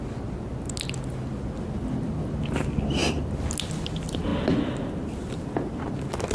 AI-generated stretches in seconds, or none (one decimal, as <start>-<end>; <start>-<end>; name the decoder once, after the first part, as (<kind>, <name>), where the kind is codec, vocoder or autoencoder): 3.0-3.5 (vocoder, BigVGAN v2)